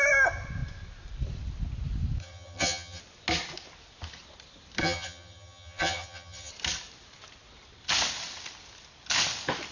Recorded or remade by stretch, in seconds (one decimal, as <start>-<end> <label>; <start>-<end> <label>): 0.0-2.2 recorded; 2.2-3.0 remade; 3.0-4.8 recorded; 4.8-6.5 remade; 6.5-9.7 recorded